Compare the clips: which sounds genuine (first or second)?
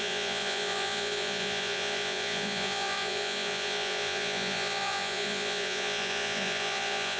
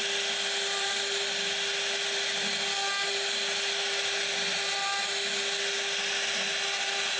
second